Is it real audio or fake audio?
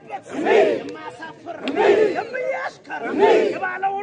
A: real